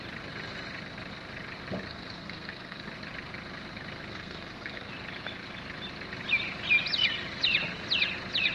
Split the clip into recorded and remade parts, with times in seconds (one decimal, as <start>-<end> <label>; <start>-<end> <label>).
0.0-1.9 recorded; 1.9-2.8 remade; 2.8-4.1 recorded; 4.1-4.9 remade; 4.9-8.5 recorded

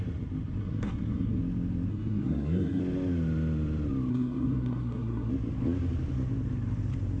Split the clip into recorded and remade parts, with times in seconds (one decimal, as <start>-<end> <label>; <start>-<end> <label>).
0.0-0.6 recorded; 0.6-1.4 remade; 1.4-1.9 recorded; 1.9-2.8 remade; 2.8-4.1 recorded; 4.1-5.3 remade; 5.3-7.2 recorded

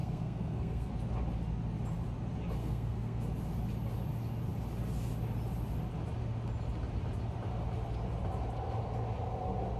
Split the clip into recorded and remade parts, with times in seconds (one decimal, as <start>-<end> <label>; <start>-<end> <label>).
0.0-0.9 remade; 0.9-2.6 recorded; 2.6-3.2 remade; 3.2-9.8 recorded

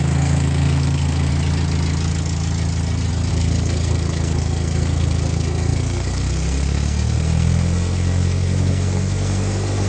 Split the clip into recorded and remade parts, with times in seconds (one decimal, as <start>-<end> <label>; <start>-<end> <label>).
0.0-1.3 remade; 1.3-3.3 recorded; 3.3-9.9 remade

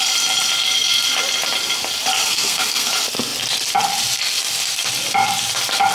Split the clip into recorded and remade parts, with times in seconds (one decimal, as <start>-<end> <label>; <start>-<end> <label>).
0.0-2.3 recorded; 2.3-2.9 remade; 2.9-5.9 recorded

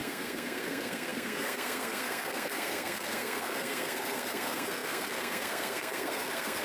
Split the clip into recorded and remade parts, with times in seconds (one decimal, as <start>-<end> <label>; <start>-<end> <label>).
0.0-6.6 remade

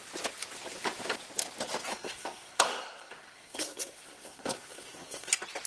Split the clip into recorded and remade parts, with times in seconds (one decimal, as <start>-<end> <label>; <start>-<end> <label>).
0.0-1.9 recorded; 1.9-5.3 remade; 5.3-5.7 recorded